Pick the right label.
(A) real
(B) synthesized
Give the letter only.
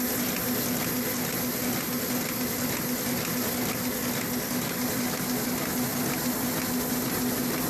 A